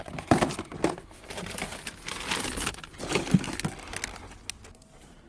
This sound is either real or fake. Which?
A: real